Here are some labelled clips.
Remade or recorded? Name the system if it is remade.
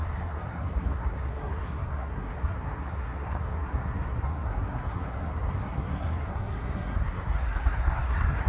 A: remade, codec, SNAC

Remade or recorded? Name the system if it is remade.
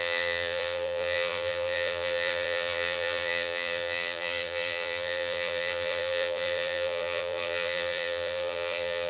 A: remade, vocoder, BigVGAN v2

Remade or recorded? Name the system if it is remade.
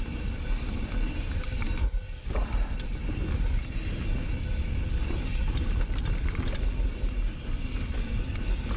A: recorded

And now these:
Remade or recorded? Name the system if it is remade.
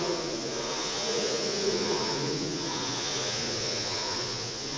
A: remade, vocoder, Vocos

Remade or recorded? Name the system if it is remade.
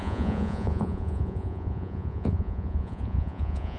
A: remade, vocoder, Vocos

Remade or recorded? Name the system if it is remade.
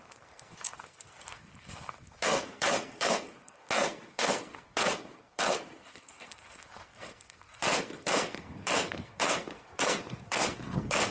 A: remade, codec, SNAC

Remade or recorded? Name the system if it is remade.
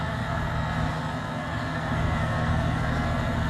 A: remade, codec, SNAC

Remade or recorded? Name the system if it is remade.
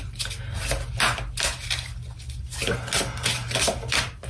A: recorded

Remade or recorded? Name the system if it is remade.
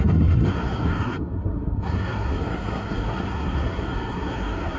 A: remade, codec, SNAC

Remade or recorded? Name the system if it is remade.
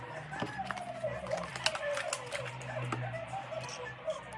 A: recorded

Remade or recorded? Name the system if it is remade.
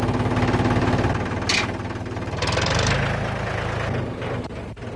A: recorded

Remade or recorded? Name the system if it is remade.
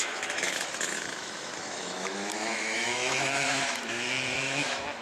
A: remade, autoencoder, DAC-VAE